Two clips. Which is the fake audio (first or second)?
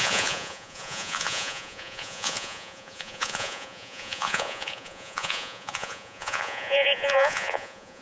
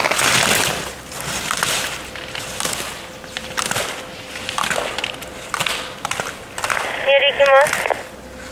first